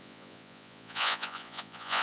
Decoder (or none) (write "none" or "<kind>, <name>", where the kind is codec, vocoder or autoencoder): vocoder, Vocos